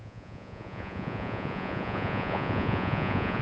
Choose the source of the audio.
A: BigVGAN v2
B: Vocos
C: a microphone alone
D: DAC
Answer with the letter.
B